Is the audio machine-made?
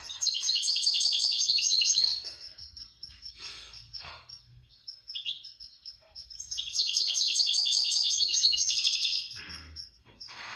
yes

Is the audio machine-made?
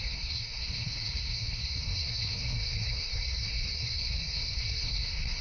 yes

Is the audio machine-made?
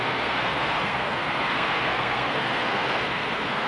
yes